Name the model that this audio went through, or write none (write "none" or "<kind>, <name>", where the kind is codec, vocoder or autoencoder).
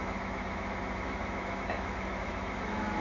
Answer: autoencoder, DAC-VAE